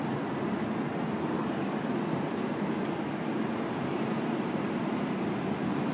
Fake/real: real